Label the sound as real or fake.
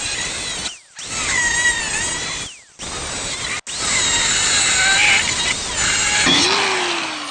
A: real